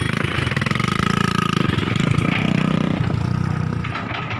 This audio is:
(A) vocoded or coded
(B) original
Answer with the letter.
B